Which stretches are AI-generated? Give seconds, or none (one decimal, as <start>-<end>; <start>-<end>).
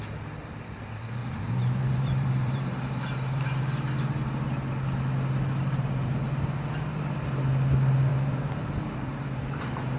1.2-3.6; 5.6-6.4; 8.1-9.6